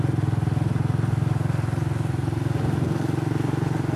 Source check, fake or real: real